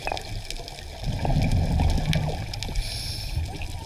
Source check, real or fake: real